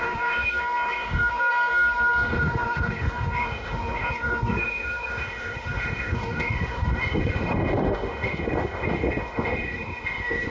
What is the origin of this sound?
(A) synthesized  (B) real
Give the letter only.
A